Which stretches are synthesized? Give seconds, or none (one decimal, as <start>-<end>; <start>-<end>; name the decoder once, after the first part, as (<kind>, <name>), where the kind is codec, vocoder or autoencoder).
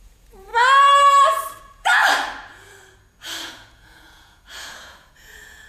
0.0-0.5 (vocoder, Vocos); 1.6-2.0; 3.4-5.7